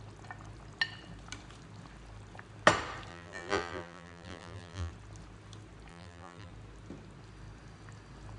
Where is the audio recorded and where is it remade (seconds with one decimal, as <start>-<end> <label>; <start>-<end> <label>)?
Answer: 0.0-3.1 recorded; 3.1-4.9 remade; 4.9-5.9 recorded; 5.9-6.5 remade; 6.5-8.4 recorded